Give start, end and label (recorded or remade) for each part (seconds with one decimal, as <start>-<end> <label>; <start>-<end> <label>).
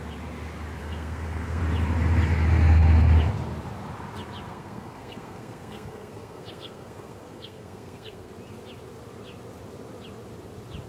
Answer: 0.0-0.8 recorded; 0.8-1.6 remade; 1.6-4.5 recorded; 4.5-8.3 remade; 8.3-10.9 recorded